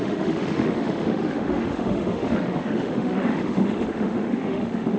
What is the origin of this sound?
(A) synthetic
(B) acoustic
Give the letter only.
A